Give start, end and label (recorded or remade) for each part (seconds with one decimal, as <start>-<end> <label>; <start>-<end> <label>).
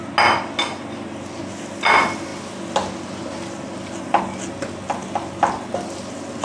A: 0.0-6.4 recorded